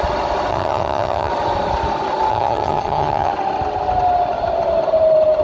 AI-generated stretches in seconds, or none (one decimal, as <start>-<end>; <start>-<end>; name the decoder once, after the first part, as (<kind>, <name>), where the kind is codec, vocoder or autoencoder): 0.5-1.3 (vocoder, HiFi-GAN); 2.3-3.3